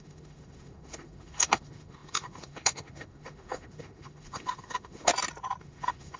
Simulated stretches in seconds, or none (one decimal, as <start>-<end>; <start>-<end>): 0.0-5.1; 5.6-6.2